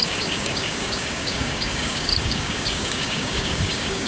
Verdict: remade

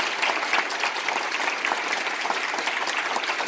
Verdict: recorded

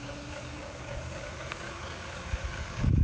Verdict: remade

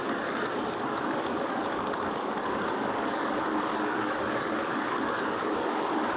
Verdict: remade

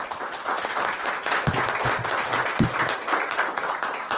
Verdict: recorded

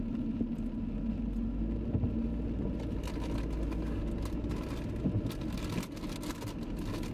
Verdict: recorded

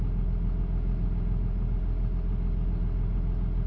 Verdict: recorded